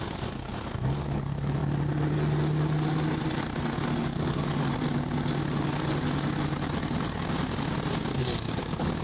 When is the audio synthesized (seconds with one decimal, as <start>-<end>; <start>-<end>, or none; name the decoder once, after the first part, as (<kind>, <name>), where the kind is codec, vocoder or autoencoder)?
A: 0.0-1.6 (codec, DAC); 4.0-4.7; 8.2-9.0